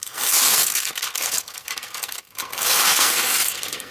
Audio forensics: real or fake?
fake